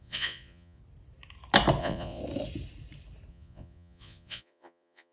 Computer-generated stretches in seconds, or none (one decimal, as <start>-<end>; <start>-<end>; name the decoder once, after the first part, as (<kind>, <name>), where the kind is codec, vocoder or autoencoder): 0.0-0.8 (vocoder, Vocos); 1.8-2.2; 3.3-5.1